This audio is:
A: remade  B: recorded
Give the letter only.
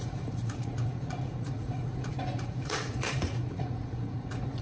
A